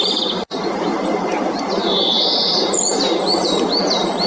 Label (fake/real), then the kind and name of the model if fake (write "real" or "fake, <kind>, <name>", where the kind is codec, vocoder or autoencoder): fake, vocoder, BigVGAN v2